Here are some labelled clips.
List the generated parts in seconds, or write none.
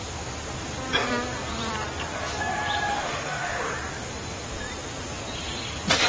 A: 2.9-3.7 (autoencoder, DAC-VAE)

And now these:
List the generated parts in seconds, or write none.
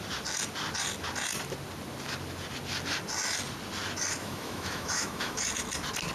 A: 4.2-5.4 (autoencoder, DAC-VAE)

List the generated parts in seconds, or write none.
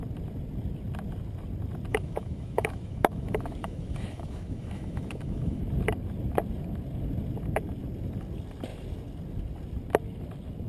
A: 1.9-5.6 (autoencoder, DAC-VAE)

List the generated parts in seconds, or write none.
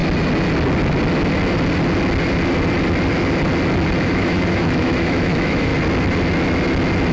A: 4.0-5.7 (autoencoder, DAC-VAE)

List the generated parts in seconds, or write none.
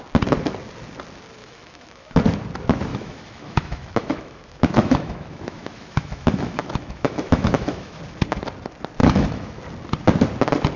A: 1.4-2.2 (autoencoder, DAC-VAE); 2.9-8.0; 9.0-9.6